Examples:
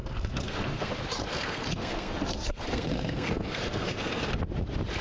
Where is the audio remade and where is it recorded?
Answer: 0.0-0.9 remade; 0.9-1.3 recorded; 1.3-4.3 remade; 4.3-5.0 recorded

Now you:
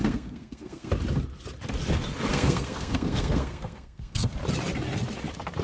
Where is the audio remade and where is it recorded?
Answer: 0.0-0.9 remade; 0.9-2.3 recorded; 2.3-4.3 remade; 4.3-5.6 recorded

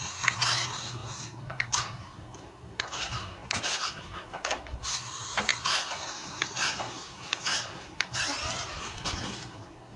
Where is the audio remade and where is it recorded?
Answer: 0.0-8.2 remade; 8.2-8.8 recorded; 8.8-10.0 remade

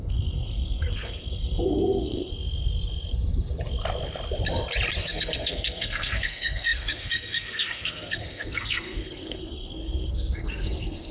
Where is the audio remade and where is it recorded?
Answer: 0.0-2.3 remade; 2.3-5.0 recorded; 5.0-11.1 remade

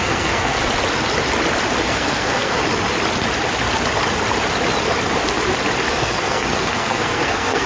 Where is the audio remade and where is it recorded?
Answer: 0.0-0.6 remade; 0.6-1.8 recorded; 1.8-2.6 remade; 2.6-5.9 recorded; 5.9-7.7 remade